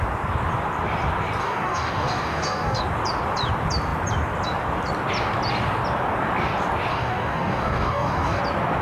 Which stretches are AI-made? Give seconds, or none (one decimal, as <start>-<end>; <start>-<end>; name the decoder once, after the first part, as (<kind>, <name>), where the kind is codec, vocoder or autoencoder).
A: 1.4-2.8 (codec, DAC); 6.9-8.4